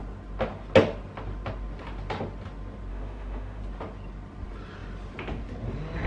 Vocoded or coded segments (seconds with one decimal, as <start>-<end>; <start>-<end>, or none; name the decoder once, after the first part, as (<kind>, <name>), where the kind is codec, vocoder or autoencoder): 2.9-3.6 (autoencoder, DAC-VAE)